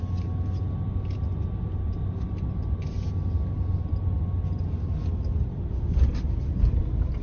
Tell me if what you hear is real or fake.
real